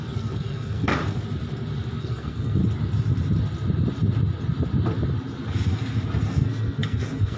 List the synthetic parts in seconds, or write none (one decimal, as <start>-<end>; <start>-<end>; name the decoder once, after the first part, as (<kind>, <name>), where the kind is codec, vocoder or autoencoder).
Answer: 0.0-0.9 (codec, SNAC); 2.0-2.6; 6.3-7.4